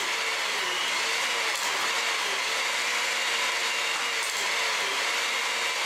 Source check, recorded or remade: recorded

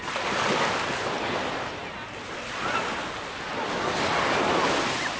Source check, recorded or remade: recorded